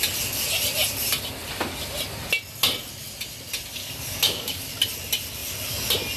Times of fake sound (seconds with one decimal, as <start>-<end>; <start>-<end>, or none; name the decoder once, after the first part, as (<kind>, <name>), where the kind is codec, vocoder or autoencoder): 3.8-4.7 (codec, DAC)